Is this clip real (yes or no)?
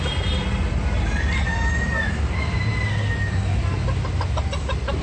yes